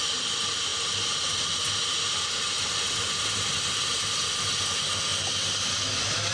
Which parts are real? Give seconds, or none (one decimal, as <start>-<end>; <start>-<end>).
0.0-6.3